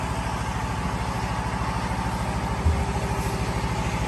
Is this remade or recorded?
recorded